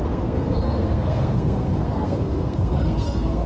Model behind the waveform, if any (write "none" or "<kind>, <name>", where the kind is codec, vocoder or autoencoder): codec, SNAC